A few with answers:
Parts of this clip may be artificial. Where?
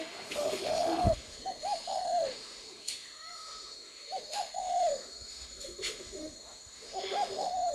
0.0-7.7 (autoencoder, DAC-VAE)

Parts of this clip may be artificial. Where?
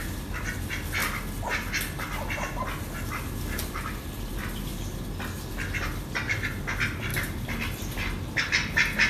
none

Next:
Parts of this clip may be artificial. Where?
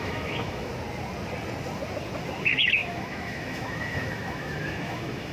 0.0-0.7 (autoencoder, DAC-VAE); 2.4-5.3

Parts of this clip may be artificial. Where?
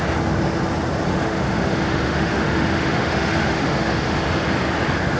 1.1-4.2 (autoencoder, DAC-VAE)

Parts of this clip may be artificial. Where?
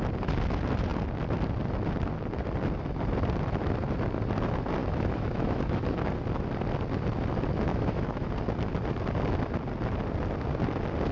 4.8-6.1 (autoencoder, DAC-VAE); 7.7-8.3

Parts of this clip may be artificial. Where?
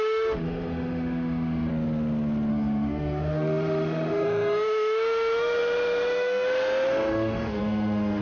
0.0-1.7 (autoencoder, DAC-VAE); 2.5-8.2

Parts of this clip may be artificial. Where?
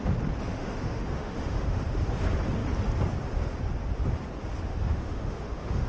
0.5-1.8 (autoencoder, DAC-VAE); 4.7-5.9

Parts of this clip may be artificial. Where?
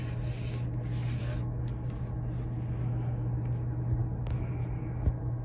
none